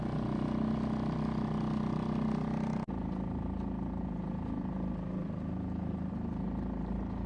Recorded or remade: recorded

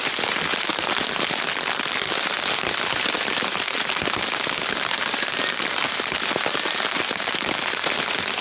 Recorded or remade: recorded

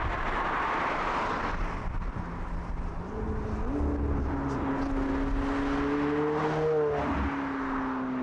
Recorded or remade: recorded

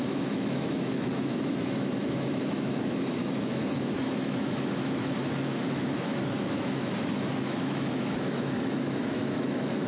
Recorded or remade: remade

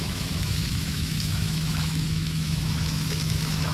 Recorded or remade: remade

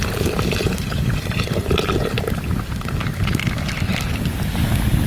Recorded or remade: recorded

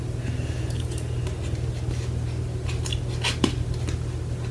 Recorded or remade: recorded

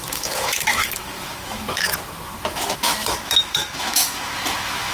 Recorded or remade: remade